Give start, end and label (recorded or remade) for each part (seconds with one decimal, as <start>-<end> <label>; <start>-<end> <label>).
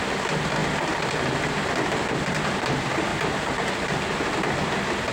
0.0-5.1 recorded